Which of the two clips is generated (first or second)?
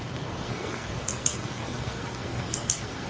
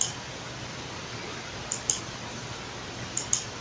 first